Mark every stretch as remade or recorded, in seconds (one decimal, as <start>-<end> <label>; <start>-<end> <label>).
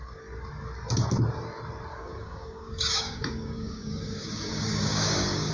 0.0-1.9 recorded; 1.9-5.5 remade